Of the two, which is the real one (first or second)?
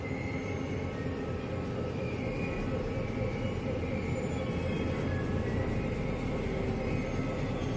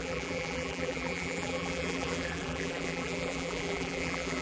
first